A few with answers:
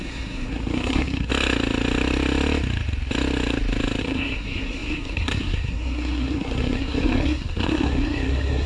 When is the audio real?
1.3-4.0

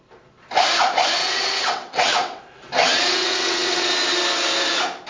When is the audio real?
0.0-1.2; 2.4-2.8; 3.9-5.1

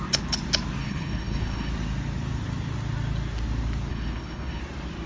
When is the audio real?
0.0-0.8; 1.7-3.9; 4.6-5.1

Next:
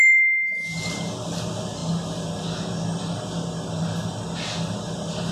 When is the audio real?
0.0-5.3

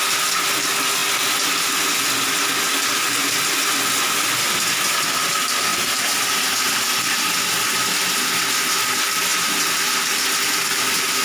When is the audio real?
0.0-5.7; 8.4-11.2